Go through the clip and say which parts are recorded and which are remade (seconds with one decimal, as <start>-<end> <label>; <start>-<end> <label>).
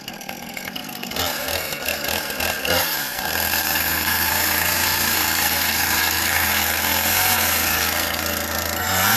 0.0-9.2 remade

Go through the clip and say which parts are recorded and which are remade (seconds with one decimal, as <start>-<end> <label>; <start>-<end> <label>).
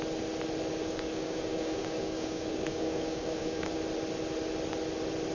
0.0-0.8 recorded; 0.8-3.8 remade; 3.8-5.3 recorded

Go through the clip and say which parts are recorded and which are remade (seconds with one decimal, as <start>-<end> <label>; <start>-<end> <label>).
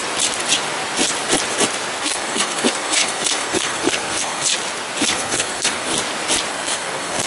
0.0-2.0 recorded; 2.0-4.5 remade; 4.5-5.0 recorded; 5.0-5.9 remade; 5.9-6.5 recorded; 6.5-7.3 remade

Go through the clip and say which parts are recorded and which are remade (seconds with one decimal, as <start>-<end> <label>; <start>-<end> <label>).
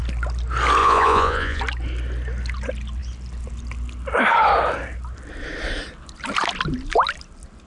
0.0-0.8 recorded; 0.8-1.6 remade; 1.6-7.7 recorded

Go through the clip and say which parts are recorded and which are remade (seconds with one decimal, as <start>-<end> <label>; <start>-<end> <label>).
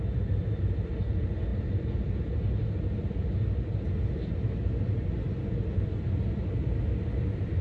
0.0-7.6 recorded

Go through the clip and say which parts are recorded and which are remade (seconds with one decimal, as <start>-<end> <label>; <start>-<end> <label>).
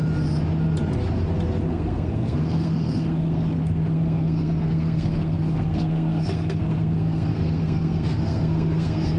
0.0-1.7 recorded; 1.7-9.2 remade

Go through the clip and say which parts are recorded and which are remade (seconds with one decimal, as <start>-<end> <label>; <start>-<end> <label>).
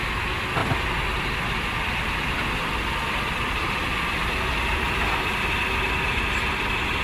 0.0-7.0 recorded